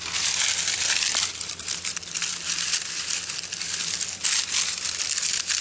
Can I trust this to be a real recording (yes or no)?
no